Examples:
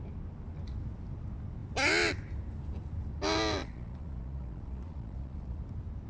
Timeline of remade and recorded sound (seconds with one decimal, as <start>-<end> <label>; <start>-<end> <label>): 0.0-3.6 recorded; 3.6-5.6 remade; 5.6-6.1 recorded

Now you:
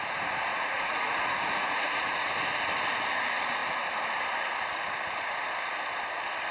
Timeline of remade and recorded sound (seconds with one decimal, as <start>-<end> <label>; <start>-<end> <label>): 0.0-0.5 recorded; 0.5-2.3 remade; 2.3-6.5 recorded

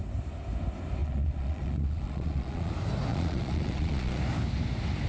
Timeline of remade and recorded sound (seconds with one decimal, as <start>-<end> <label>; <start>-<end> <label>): 0.0-1.0 recorded; 1.0-2.7 remade; 2.7-3.1 recorded; 3.1-4.2 remade; 4.2-5.1 recorded